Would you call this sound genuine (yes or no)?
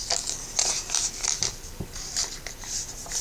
no